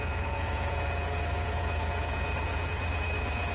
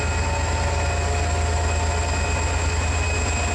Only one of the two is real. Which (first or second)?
second